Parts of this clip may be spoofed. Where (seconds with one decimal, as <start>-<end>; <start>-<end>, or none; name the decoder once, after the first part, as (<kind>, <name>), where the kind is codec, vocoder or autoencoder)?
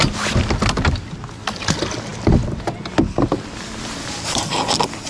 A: none